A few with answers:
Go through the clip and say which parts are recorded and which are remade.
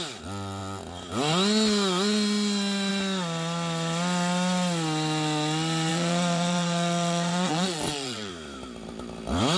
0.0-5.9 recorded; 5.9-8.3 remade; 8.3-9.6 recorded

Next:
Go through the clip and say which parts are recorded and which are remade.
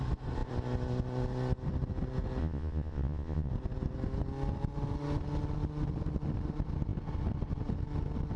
0.0-2.4 recorded; 2.4-3.5 remade; 3.5-8.4 recorded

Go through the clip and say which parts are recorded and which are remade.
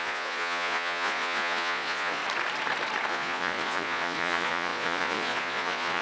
0.0-2.2 remade; 2.2-3.1 recorded; 3.1-6.0 remade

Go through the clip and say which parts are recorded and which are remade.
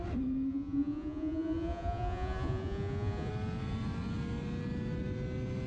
0.0-0.5 recorded; 0.5-3.3 remade; 3.3-5.7 recorded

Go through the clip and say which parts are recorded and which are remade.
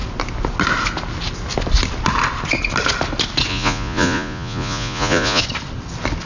0.0-3.5 recorded; 3.5-5.4 remade; 5.4-6.3 recorded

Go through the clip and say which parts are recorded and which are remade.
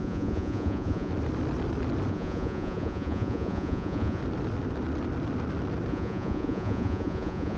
0.0-1.1 remade; 1.1-2.1 recorded; 2.1-4.2 remade; 4.2-5.9 recorded; 5.9-7.6 remade